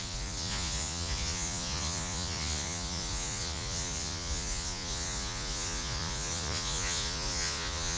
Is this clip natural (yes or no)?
no